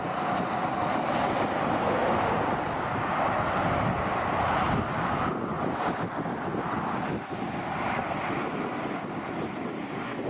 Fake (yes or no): no